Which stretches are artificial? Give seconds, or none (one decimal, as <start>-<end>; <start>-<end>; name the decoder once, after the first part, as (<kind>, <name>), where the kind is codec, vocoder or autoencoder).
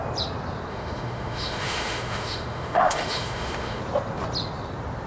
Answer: 0.7-3.8 (autoencoder, DAC-VAE)